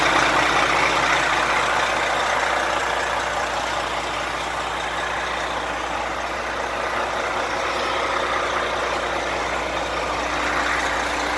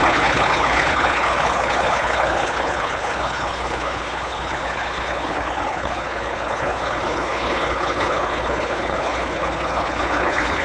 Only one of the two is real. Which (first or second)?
first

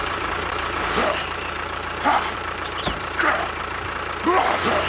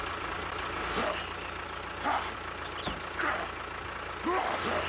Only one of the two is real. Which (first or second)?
second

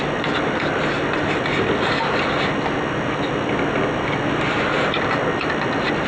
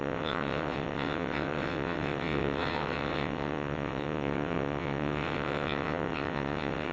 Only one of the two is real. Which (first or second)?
first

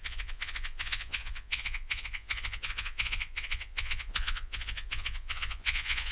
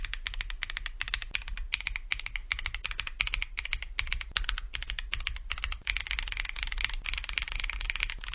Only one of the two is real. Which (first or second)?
second